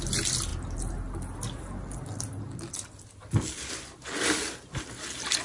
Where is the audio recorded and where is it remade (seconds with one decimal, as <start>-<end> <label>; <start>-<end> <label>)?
0.0-5.4 recorded